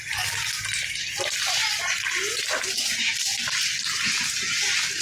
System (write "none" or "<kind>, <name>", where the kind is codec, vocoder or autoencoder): none